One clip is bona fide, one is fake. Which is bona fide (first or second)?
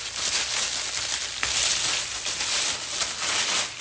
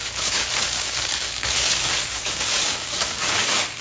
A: first